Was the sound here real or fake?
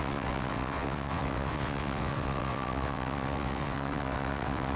fake